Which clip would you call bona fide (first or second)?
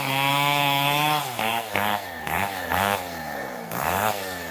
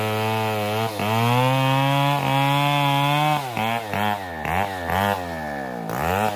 second